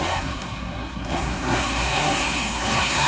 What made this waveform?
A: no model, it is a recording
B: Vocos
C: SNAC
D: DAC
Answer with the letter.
C